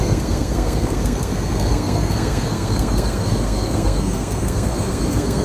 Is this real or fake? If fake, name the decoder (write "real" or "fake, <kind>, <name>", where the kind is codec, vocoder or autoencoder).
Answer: fake, codec, SNAC